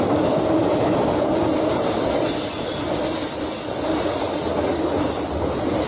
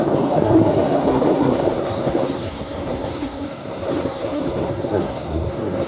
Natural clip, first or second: first